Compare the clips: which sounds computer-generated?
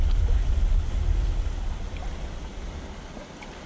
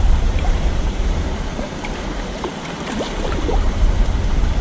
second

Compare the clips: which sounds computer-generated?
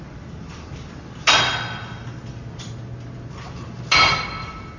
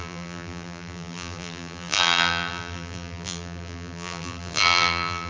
second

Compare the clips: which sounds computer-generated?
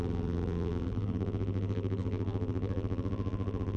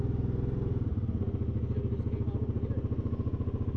first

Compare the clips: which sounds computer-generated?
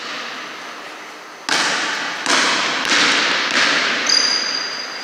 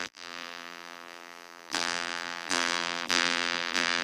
second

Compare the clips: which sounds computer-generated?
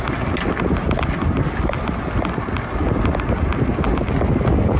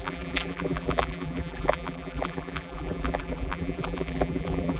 second